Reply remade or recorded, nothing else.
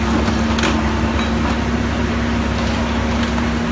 recorded